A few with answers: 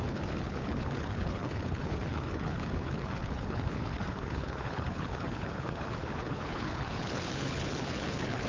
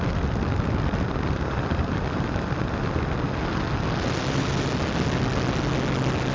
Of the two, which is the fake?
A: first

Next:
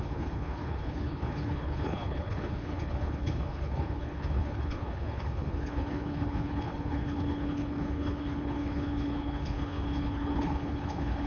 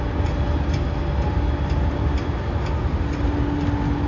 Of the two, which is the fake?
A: first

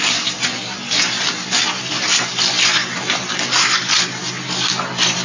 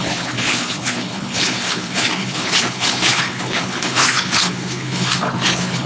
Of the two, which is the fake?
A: second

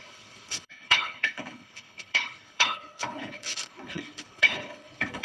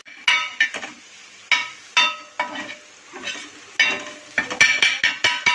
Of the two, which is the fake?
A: first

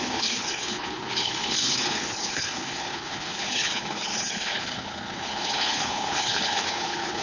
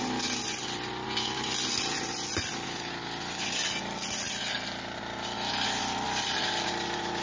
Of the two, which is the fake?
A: first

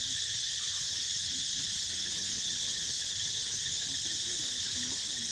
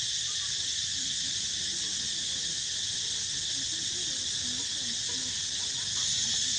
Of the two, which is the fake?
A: first